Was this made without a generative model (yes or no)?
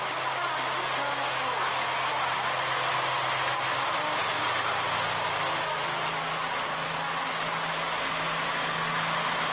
yes